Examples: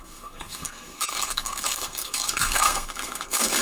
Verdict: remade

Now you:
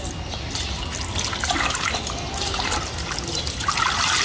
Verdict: recorded